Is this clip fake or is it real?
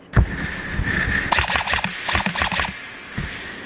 real